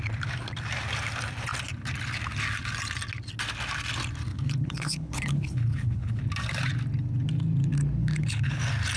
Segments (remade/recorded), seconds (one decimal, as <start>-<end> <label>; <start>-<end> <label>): 0.0-4.3 recorded; 4.3-6.2 remade; 6.2-8.0 recorded; 8.0-8.6 remade; 8.6-9.0 recorded